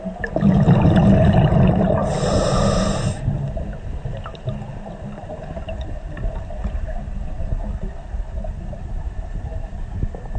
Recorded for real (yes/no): yes